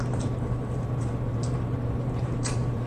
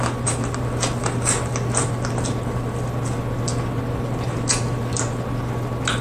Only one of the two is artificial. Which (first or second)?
first